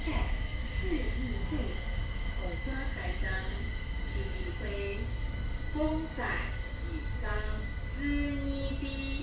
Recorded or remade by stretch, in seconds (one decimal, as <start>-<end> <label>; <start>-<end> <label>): 0.0-7.8 remade; 7.8-9.2 recorded